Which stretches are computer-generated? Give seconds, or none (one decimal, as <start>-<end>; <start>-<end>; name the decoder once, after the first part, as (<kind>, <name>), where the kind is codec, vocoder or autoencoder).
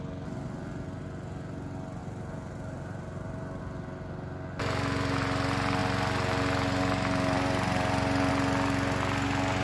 2.0-3.6 (vocoder, BigVGAN v2)